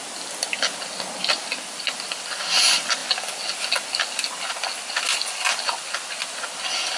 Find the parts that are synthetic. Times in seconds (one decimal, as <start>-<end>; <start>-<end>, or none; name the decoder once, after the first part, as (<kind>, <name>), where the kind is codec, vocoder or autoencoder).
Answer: none